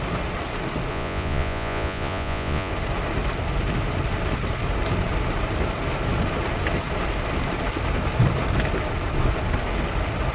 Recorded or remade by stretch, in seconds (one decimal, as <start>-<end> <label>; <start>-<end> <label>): 0.0-0.9 recorded; 0.9-2.7 remade; 2.7-10.3 recorded